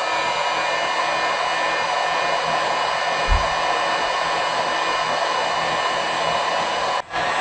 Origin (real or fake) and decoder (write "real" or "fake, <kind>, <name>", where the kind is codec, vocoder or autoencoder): real